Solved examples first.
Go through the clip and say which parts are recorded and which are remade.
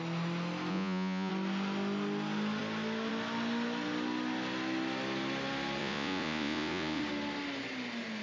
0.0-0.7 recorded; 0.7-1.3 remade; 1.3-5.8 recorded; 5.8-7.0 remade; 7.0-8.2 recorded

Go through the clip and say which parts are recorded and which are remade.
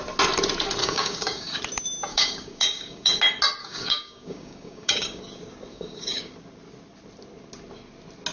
0.0-0.8 recorded; 0.8-1.6 remade; 1.6-2.1 recorded; 2.1-3.2 remade; 3.2-3.6 recorded; 3.6-5.2 remade; 5.2-5.7 recorded; 5.7-6.3 remade; 6.3-8.3 recorded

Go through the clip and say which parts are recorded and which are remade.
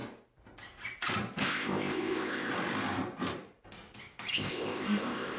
0.0-1.4 recorded; 1.4-2.5 remade; 2.5-4.3 recorded; 4.3-5.4 remade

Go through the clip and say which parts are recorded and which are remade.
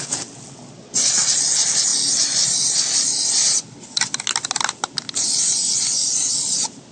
0.0-6.9 recorded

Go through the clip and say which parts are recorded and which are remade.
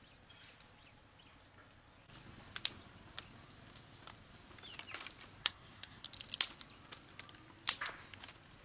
0.0-5.4 recorded; 5.4-6.0 remade; 6.0-8.6 recorded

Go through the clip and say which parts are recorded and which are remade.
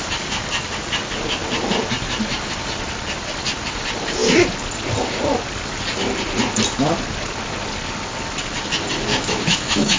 0.0-9.1 recorded; 9.1-10.0 remade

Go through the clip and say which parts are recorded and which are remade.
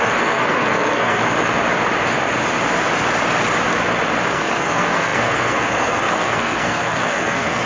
0.0-1.2 remade; 1.2-4.3 recorded; 4.3-7.7 remade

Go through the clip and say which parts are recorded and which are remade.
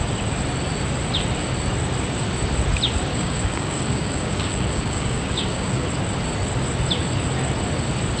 0.0-3.1 recorded; 3.1-5.9 remade; 5.9-8.2 recorded